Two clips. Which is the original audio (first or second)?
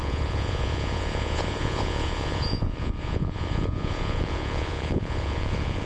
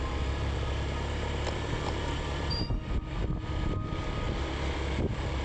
second